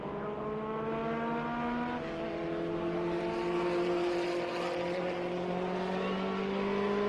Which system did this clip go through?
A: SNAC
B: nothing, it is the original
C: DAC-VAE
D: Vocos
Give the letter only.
B